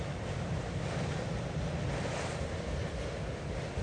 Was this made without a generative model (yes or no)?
yes